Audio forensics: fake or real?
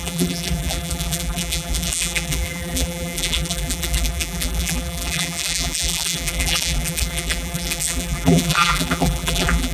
fake